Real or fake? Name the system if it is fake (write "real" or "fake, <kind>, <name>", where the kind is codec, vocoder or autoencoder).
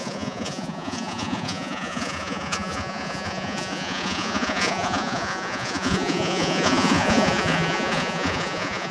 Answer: fake, vocoder, Vocos